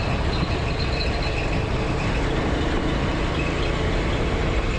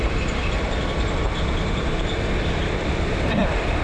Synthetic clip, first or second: second